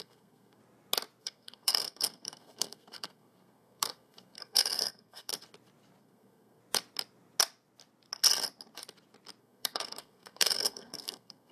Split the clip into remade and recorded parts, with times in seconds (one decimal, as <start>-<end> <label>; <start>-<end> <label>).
0.0-0.6 remade; 0.6-1.2 recorded; 1.2-5.3 remade; 5.3-6.0 recorded; 6.0-6.6 remade; 6.6-9.4 recorded; 9.4-11.5 remade